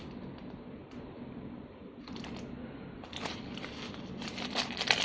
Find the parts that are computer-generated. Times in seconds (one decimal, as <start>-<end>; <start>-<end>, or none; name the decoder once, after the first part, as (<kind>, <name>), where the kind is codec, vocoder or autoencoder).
none